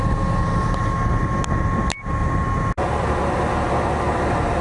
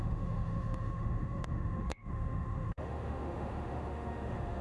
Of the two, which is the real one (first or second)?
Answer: first